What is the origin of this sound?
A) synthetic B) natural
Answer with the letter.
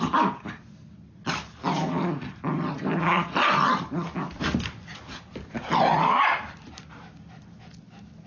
B